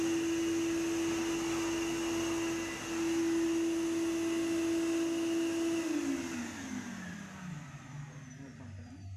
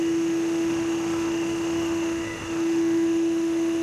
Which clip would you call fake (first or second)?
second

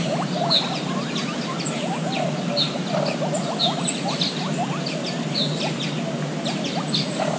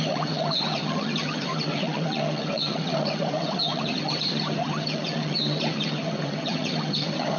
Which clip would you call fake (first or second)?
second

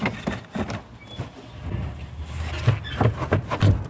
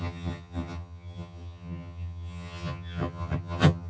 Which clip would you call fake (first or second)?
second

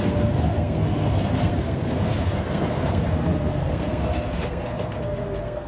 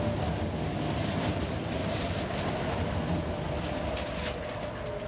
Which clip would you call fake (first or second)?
first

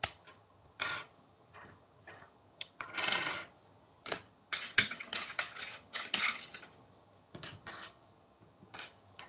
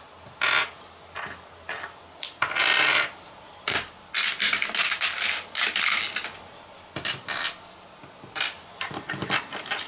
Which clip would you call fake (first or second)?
first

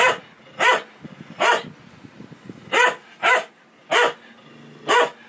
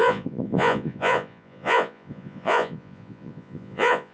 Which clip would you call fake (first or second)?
second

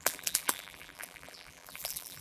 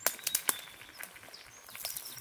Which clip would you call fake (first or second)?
first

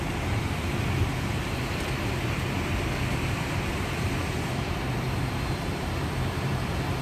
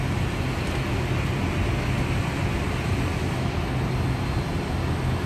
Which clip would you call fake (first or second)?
first